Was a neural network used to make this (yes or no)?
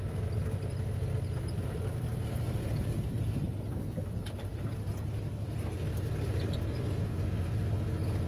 no